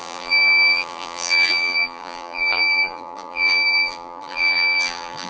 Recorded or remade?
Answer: remade